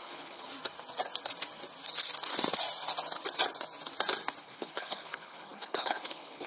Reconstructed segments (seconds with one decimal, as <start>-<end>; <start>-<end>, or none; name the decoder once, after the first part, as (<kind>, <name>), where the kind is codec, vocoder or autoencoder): 0.0-0.5 (codec, HILCodec); 4.4-6.5